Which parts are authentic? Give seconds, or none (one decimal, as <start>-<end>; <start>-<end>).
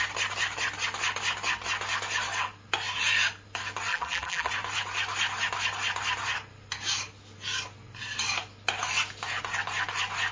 0.0-3.9; 4.5-10.3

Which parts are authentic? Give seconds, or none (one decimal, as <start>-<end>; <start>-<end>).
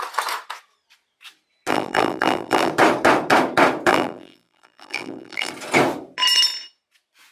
0.0-1.7; 2.7-3.9; 5.5-7.3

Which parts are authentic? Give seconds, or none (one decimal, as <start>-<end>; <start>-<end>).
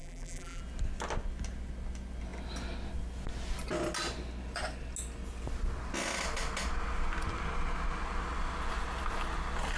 0.6-9.8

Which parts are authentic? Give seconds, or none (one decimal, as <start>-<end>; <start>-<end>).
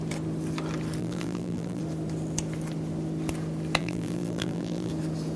0.0-1.0; 1.8-3.8; 4.9-5.4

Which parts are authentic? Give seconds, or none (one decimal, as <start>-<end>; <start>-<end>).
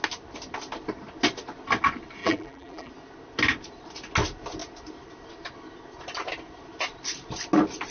0.0-2.2; 2.9-7.9